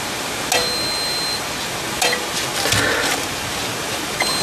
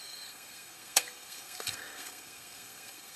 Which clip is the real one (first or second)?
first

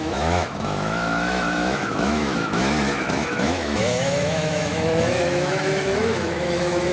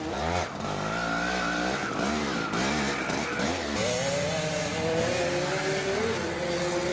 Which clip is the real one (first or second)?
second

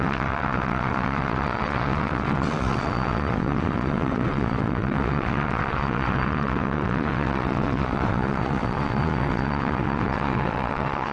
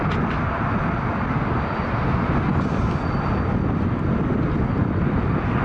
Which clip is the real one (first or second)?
second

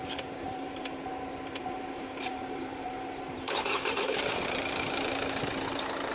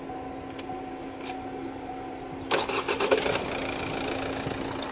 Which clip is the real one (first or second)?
second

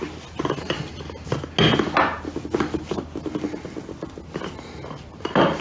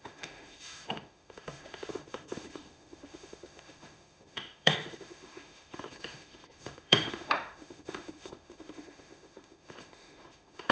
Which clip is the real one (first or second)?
first